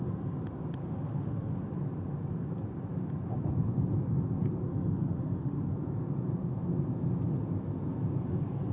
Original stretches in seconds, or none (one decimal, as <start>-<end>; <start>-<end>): 0.0-0.8; 1.5-4.7; 5.7-8.7